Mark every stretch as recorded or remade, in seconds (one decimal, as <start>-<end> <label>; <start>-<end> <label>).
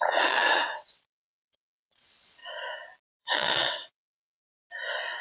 0.0-2.4 remade; 2.4-3.2 recorded; 3.2-4.4 remade; 4.4-5.2 recorded